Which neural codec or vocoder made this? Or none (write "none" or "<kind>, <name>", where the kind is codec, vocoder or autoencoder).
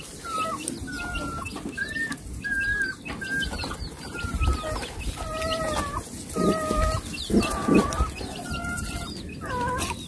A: none